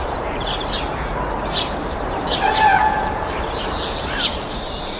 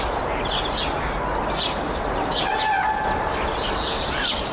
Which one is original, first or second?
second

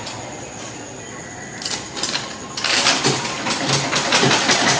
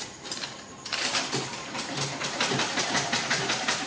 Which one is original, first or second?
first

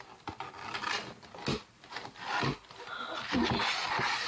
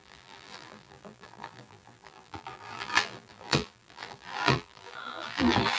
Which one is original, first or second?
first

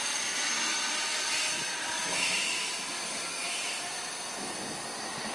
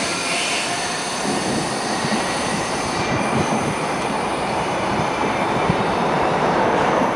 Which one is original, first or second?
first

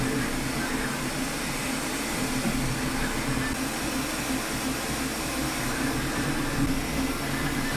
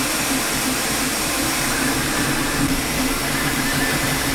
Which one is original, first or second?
first